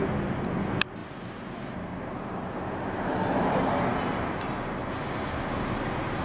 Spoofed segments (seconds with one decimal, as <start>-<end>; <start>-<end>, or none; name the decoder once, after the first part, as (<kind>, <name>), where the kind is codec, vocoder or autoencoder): none